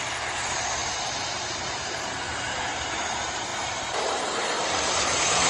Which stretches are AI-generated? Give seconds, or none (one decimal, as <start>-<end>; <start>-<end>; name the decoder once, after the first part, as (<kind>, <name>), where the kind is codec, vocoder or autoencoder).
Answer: 0.0-5.5 (vocoder, BigVGAN v2)